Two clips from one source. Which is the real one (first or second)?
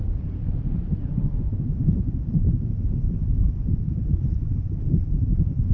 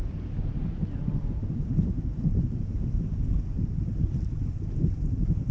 second